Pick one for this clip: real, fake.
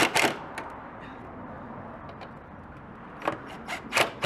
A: real